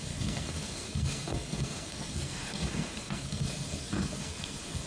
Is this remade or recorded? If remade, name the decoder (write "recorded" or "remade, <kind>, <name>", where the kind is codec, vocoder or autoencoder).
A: remade, codec, SNAC